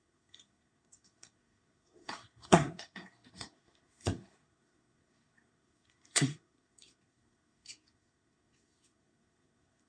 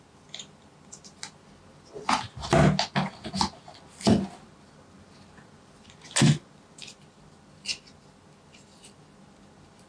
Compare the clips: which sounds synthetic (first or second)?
first